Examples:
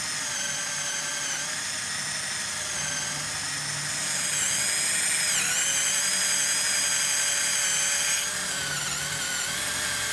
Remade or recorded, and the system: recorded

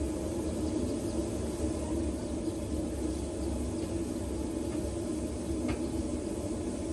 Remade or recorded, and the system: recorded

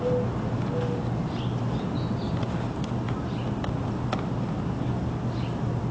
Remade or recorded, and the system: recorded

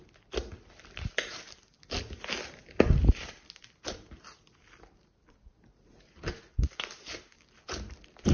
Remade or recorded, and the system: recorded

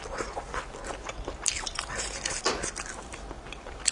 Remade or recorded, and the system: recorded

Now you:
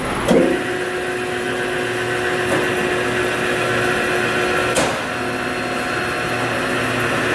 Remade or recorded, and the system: recorded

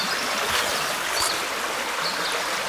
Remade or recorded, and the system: recorded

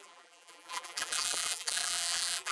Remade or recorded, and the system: remade, vocoder, BigVGAN v2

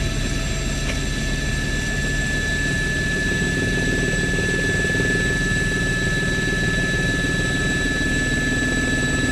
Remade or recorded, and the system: recorded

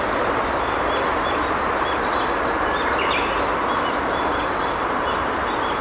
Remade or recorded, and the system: recorded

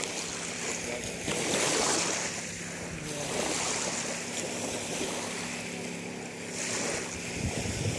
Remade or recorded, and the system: recorded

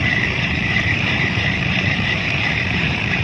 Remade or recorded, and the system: remade, vocoder, BigVGAN v2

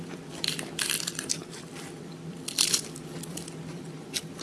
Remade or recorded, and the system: remade, vocoder, BigVGAN v2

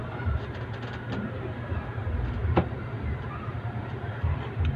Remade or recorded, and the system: remade, vocoder, BigVGAN v2